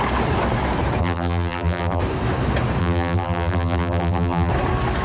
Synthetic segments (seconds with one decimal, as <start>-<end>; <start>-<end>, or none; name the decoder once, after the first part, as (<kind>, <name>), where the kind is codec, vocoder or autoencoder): 1.0-2.0 (vocoder, BigVGAN v2); 2.8-4.5